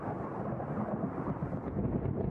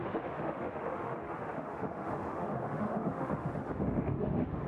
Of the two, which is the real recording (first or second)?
first